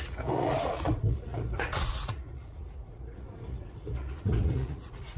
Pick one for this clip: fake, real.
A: fake